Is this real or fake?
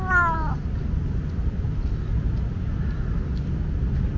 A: real